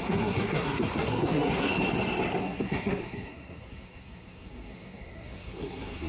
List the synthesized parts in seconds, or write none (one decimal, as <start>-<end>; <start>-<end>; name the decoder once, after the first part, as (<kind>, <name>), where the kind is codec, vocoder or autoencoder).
0.0-1.7 (codec, SNAC); 2.4-6.1